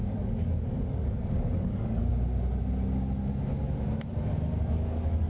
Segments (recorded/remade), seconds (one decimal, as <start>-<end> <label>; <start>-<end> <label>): 0.0-2.1 remade; 2.1-4.6 recorded; 4.6-5.3 remade